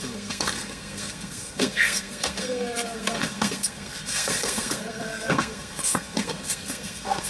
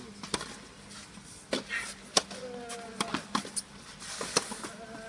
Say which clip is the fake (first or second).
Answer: first